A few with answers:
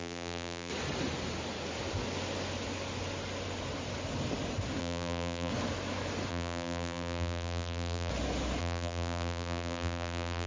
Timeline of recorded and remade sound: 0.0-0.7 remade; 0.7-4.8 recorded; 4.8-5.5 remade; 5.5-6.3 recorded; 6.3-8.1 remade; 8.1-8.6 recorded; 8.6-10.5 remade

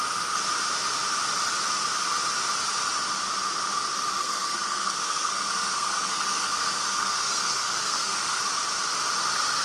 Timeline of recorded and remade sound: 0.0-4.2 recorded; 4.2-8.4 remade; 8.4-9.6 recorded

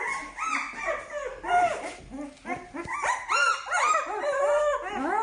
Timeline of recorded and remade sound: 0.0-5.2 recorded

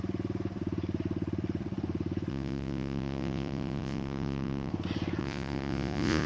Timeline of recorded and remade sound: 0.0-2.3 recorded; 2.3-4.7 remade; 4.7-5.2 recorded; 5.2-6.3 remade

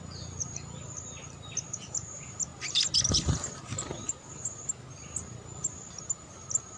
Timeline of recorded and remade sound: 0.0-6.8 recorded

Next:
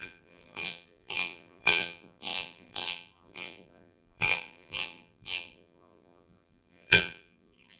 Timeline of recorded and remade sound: 0.0-7.8 remade

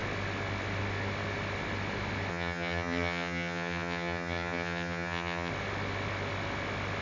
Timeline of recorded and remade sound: 0.0-2.3 recorded; 2.3-5.5 remade; 5.5-7.0 recorded

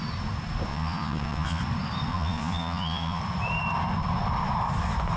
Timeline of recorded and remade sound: 0.0-0.7 recorded; 0.7-1.6 remade; 1.6-2.1 recorded; 2.1-3.2 remade; 3.2-5.2 recorded